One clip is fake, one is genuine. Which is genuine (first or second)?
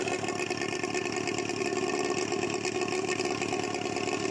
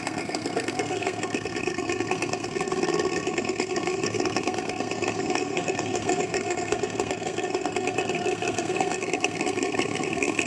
first